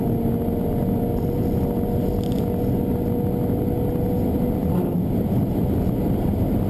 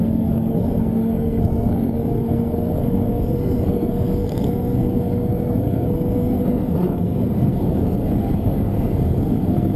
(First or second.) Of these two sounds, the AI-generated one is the second